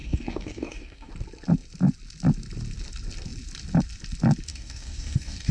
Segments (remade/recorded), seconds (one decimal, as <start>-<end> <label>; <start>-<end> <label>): 0.0-1.1 remade; 1.1-4.5 recorded; 4.5-5.5 remade